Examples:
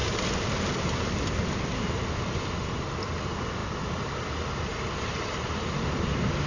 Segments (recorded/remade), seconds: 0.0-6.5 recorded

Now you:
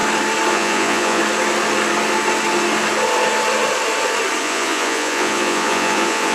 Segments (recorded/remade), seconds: 0.0-0.5 recorded; 0.5-1.2 remade; 1.2-4.4 recorded; 4.4-6.3 remade

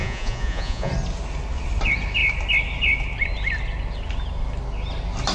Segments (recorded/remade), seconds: 0.0-0.9 remade; 0.9-5.3 recorded